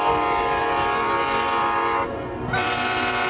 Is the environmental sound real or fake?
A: real